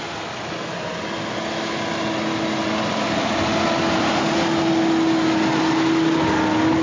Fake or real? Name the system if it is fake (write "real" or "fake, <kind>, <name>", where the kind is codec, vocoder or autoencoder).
real